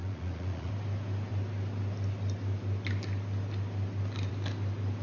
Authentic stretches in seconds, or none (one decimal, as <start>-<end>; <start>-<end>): 0.7-5.0